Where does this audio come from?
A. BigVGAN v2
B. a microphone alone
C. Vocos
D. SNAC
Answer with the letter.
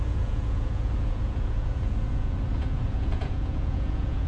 C